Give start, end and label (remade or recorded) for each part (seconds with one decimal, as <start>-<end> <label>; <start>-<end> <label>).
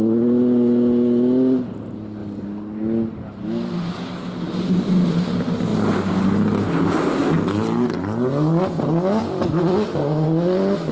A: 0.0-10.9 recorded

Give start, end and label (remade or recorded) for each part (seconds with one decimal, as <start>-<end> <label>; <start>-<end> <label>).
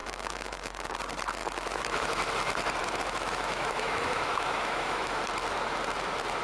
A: 0.0-0.9 remade; 0.9-1.4 recorded; 1.4-2.3 remade; 2.3-2.8 recorded; 2.8-5.2 remade; 5.2-6.4 recorded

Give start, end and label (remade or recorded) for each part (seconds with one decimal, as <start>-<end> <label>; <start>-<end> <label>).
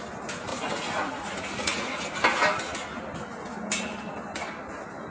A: 0.0-0.5 recorded; 0.5-2.0 remade; 2.0-5.1 recorded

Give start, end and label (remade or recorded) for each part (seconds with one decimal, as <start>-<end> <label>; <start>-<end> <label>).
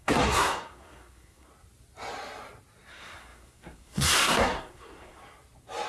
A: 0.0-1.5 remade; 1.5-2.9 recorded; 2.9-5.2 remade; 5.2-5.9 recorded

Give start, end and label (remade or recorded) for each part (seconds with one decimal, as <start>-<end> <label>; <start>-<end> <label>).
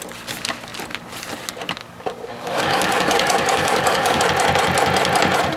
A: 0.0-1.8 recorded; 1.8-4.2 remade; 4.2-5.6 recorded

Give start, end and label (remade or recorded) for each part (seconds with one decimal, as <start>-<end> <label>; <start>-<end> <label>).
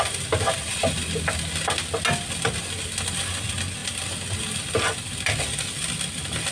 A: 0.0-6.5 recorded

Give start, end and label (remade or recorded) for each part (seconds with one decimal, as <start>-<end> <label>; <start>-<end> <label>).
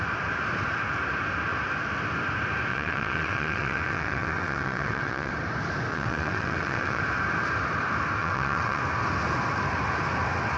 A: 0.0-2.7 recorded; 2.7-5.3 remade; 5.3-5.9 recorded; 5.9-7.0 remade; 7.0-8.2 recorded; 8.2-8.8 remade; 8.8-10.6 recorded